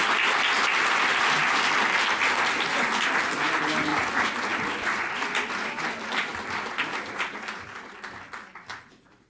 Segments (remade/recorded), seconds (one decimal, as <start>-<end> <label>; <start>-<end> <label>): 0.0-9.3 recorded